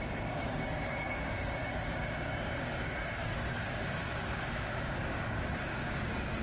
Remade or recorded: remade